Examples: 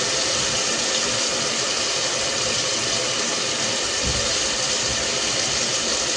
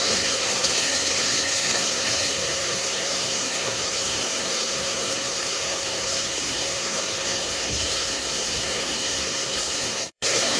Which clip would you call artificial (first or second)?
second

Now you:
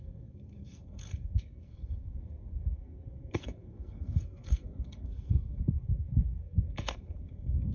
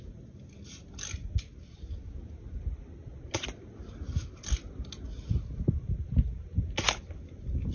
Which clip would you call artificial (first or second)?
first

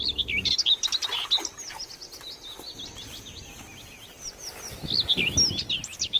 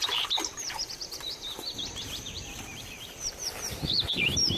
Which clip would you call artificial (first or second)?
second